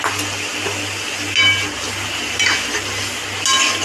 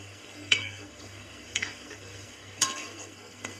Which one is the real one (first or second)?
first